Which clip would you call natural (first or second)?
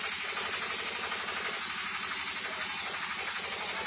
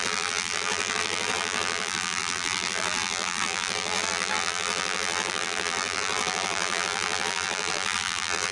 first